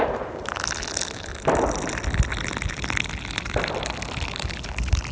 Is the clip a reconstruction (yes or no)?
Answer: no